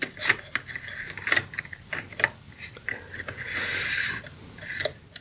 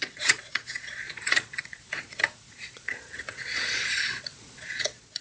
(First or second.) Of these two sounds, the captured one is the first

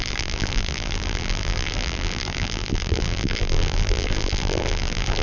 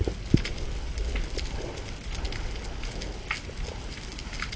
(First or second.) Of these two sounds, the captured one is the second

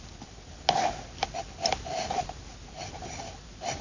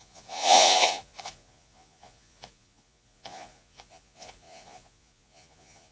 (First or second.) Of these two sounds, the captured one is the first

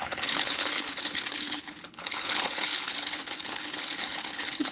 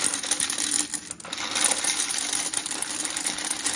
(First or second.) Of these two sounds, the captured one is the second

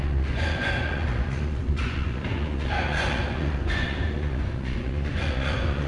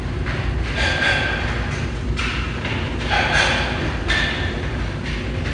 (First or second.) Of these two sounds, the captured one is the second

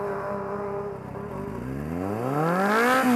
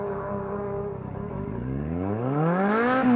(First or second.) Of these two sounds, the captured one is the first